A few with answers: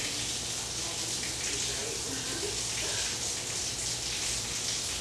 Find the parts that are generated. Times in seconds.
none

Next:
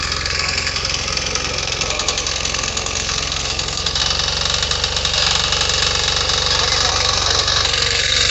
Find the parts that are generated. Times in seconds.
0.0-4.0 (codec, SNAC); 6.9-8.3

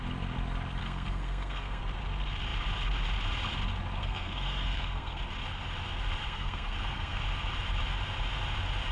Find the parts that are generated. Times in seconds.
0.8-1.8 (codec, SNAC); 4.0-5.2; 6.2-7.2

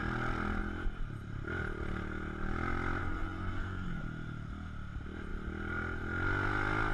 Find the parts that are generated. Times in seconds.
3.0-4.0 (codec, SNAC)

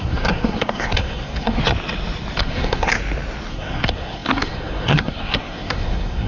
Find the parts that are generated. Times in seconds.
0.0-1.6 (codec, SNAC); 2.4-3.0; 3.5-6.3